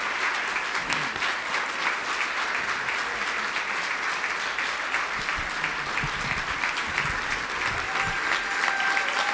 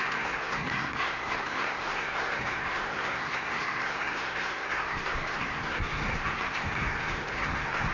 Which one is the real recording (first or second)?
first